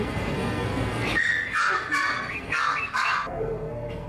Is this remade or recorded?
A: remade